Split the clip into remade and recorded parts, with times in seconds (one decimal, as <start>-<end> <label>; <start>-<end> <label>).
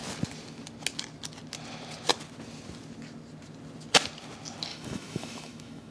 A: 0.0-4.7 recorded; 4.7-5.9 remade